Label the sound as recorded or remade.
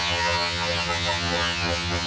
remade